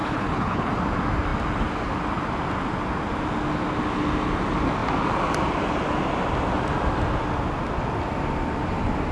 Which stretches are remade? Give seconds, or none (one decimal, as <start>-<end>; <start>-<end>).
0.0-0.7